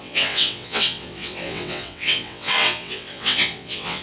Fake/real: fake